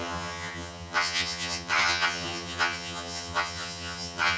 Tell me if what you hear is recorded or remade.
remade